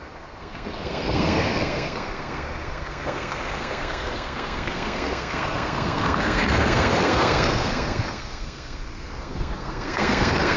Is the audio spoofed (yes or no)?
yes